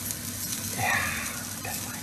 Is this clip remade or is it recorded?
recorded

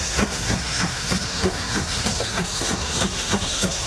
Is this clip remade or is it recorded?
remade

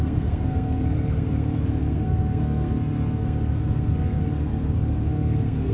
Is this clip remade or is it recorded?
remade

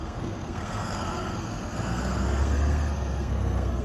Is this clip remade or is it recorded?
remade